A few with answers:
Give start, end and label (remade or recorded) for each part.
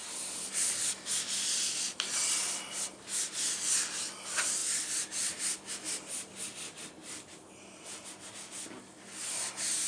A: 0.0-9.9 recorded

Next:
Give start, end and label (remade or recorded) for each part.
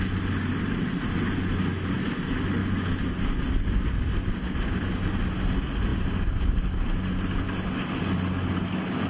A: 0.0-9.1 recorded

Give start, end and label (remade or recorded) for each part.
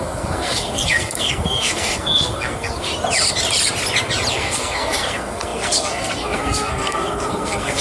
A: 0.0-2.9 remade; 2.9-4.3 recorded; 4.3-7.8 remade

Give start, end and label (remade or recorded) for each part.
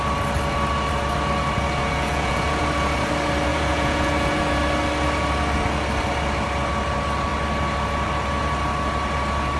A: 0.0-1.8 recorded; 1.8-2.6 remade; 2.6-3.5 recorded; 3.5-4.6 remade; 4.6-9.6 recorded